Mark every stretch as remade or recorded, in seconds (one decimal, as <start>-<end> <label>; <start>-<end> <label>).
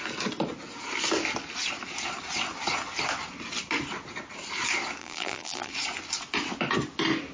0.0-5.0 recorded; 5.0-5.7 remade; 5.7-7.3 recorded